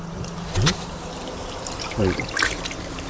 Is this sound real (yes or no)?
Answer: no